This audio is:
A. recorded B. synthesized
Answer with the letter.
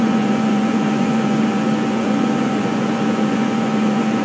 B